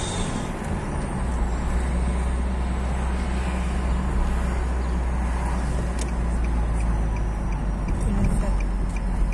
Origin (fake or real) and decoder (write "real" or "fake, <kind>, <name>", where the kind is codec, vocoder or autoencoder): real